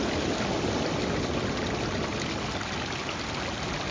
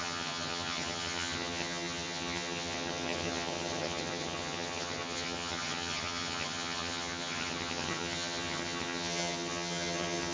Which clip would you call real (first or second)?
first